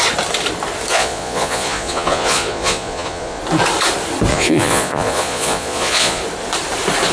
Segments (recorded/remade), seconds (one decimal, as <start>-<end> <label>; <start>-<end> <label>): 0.0-0.9 recorded; 0.9-3.4 remade; 3.4-4.3 recorded; 4.3-6.2 remade; 6.2-7.1 recorded